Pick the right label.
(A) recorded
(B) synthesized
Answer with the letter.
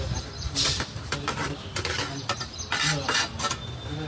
A